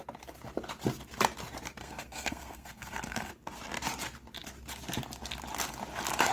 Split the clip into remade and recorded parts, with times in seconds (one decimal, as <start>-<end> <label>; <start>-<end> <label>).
0.0-1.8 recorded; 1.8-3.3 remade; 3.3-6.3 recorded